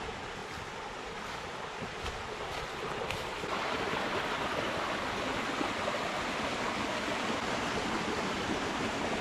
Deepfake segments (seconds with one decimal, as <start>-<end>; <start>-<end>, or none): 0.0-9.2